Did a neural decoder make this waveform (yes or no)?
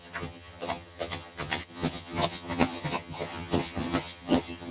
yes